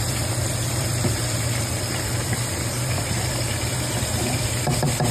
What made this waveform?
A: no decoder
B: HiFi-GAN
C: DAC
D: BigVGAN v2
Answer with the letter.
D